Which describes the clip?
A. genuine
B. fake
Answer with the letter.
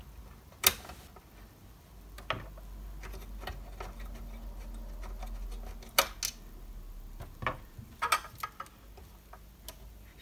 A